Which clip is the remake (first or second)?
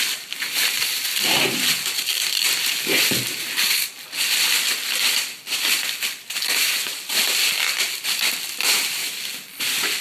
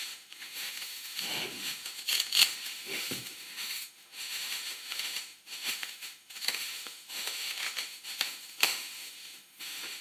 second